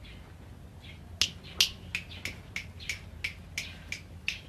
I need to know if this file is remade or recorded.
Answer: recorded